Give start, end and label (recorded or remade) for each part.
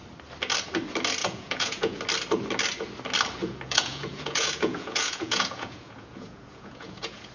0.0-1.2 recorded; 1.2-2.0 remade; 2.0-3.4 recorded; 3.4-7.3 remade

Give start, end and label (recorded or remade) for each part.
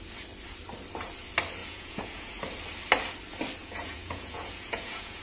0.0-1.6 recorded; 1.6-2.3 remade; 2.3-3.6 recorded; 3.6-5.2 remade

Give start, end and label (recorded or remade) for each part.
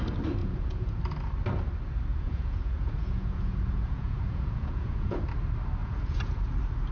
0.0-0.4 recorded; 0.4-1.0 remade; 1.0-2.1 recorded; 2.1-5.2 remade; 5.2-5.8 recorded; 5.8-6.4 remade; 6.4-6.9 recorded